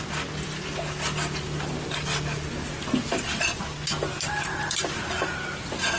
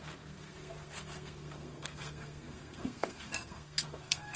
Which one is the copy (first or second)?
second